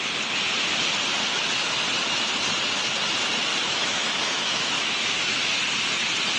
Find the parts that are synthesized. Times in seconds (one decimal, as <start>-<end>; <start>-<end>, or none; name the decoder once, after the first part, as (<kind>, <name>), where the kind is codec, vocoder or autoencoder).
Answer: 1.3-1.8 (autoencoder, DAC-VAE); 3.5-5.5